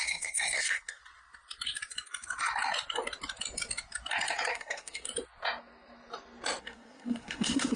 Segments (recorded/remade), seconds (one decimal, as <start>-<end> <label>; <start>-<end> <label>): 0.0-1.0 remade; 1.0-4.5 recorded; 4.5-5.1 remade; 5.1-6.6 recorded; 6.6-7.8 remade